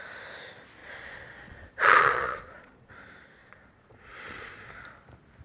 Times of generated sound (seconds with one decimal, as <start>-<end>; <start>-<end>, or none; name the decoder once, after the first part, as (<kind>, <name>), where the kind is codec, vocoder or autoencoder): 0.8-2.9 (vocoder, Vocos); 3.4-4.7